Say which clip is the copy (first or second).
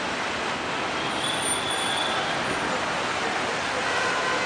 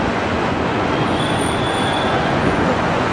second